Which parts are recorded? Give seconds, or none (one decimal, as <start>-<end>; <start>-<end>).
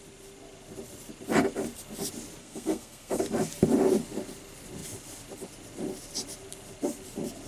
0.0-2.4; 3.2-7.5